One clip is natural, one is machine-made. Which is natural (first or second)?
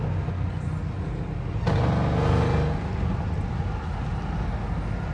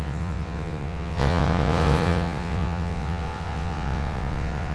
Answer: first